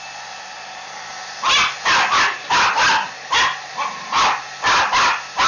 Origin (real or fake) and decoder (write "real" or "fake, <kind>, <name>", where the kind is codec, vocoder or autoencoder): real